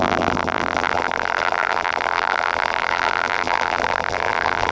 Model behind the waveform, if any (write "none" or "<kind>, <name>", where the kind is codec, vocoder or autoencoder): vocoder, BigVGAN v2